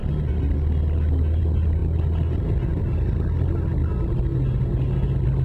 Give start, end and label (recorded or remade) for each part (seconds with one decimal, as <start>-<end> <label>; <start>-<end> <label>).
0.0-4.3 recorded; 4.3-4.9 remade; 4.9-5.4 recorded